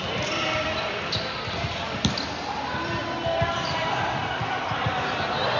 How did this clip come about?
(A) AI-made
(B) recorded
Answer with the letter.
B